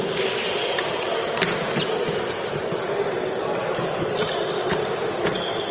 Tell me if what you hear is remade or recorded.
remade